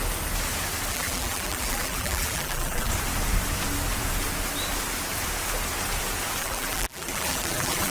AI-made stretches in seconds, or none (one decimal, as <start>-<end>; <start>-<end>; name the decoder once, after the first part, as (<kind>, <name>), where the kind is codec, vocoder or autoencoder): 0.9-2.9 (vocoder, BigVGAN v2); 6.4-7.9